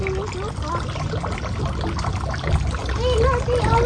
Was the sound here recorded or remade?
recorded